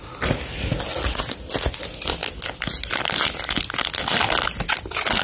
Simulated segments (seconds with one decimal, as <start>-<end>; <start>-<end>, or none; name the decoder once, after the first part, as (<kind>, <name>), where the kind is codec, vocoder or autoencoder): none